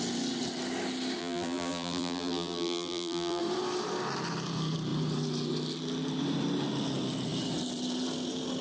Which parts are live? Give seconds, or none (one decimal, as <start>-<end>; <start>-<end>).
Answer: 0.0-1.2; 3.4-8.6